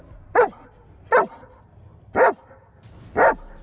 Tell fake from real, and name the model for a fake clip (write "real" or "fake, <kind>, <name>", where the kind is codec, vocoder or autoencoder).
real